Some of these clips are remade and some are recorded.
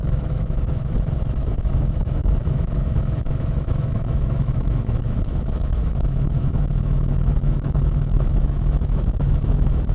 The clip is remade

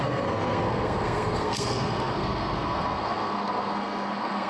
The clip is remade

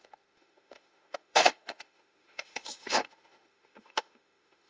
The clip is remade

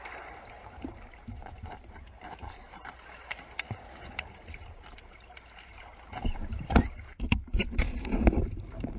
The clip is remade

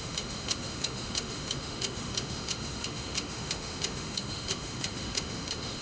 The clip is remade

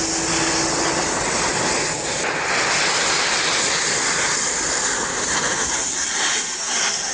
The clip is recorded